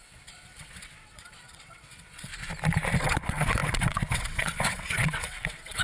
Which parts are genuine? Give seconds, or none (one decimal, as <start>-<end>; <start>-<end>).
2.3-3.0